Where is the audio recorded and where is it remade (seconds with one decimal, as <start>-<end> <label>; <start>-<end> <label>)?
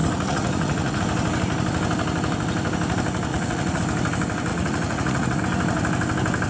0.0-1.0 remade; 1.0-3.3 recorded; 3.3-3.8 remade; 3.8-4.5 recorded; 4.5-5.4 remade; 5.4-6.5 recorded